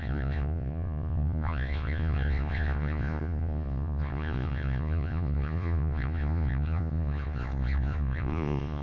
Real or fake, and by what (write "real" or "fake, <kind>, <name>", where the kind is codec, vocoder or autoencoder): fake, vocoder, Vocos